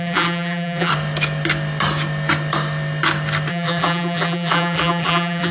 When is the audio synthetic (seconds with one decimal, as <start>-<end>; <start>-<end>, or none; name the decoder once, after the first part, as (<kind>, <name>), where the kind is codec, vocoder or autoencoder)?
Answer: 0.0-0.9 (vocoder, BigVGAN v2); 3.5-5.5